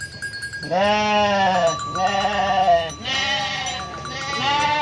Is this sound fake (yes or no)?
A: no